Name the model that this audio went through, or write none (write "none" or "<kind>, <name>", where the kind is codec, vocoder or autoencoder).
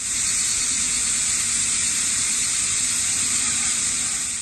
vocoder, BigVGAN v2